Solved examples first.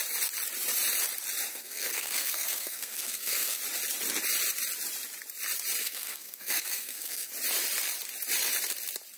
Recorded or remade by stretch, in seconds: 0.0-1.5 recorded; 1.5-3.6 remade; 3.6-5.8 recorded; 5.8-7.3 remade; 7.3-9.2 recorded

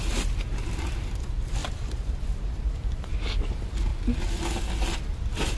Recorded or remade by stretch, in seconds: 0.0-5.6 recorded